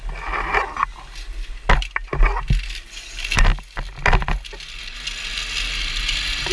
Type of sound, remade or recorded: recorded